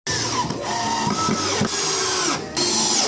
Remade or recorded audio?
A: recorded